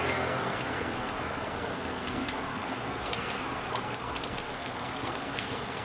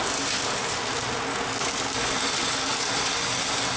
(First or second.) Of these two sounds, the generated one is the first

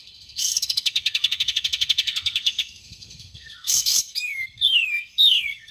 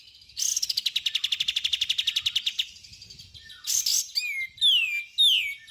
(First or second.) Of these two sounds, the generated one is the first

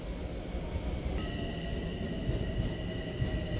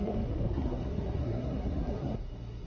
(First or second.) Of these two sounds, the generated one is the second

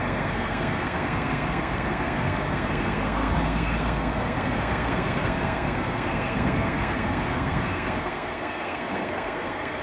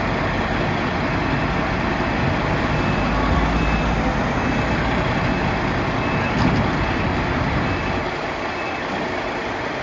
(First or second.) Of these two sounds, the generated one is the first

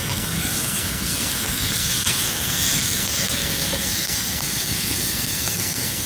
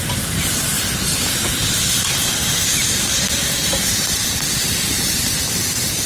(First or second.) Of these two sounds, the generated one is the first